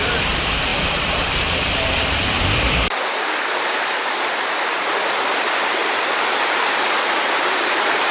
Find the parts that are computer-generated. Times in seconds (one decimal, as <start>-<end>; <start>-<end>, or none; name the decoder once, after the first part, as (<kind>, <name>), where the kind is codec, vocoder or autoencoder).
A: 0.0-5.8 (vocoder, BigVGAN v2); 6.5-8.1